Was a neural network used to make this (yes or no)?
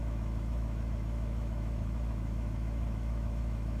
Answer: yes